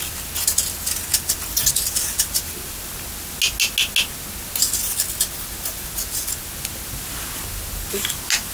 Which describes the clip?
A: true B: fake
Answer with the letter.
A